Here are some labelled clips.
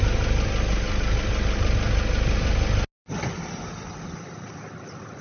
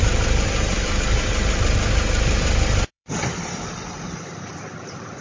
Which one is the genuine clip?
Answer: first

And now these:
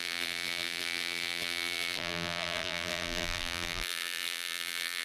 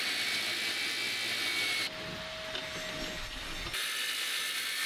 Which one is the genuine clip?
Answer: second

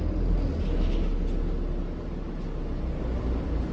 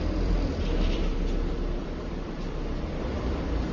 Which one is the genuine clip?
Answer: first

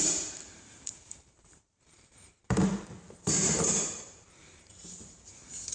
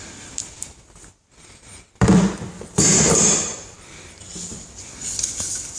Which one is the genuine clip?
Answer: second